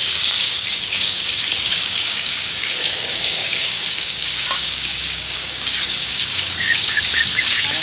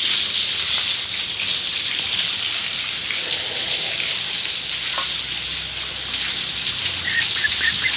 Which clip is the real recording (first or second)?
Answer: second